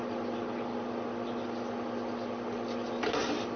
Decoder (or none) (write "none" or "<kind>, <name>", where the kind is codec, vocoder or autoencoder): none